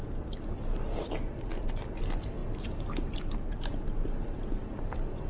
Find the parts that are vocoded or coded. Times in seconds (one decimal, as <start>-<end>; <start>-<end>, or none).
none

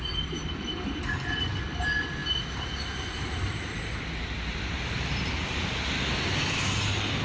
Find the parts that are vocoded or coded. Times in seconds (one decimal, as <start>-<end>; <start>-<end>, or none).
none

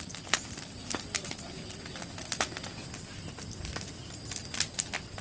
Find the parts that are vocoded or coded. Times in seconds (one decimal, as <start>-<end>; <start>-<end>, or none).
none

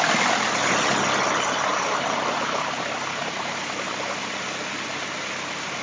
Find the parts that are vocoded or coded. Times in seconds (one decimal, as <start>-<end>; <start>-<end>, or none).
1.7-3.3

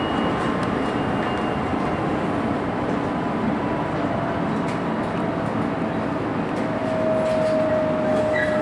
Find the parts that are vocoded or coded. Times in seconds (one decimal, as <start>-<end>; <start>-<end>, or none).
none

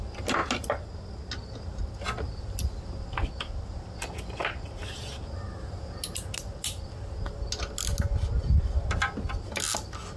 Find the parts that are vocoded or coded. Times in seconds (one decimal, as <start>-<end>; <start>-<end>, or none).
none

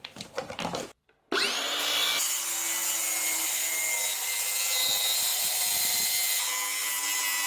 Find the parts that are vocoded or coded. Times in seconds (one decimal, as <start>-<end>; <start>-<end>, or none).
none